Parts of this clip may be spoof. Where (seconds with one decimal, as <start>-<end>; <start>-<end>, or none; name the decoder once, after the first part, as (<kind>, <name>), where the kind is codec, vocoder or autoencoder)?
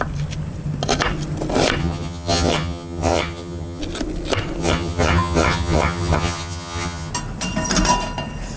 1.8-3.8 (vocoder, HiFi-GAN); 4.6-7.1